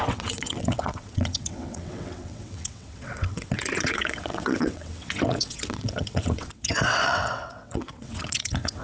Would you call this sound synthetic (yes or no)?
yes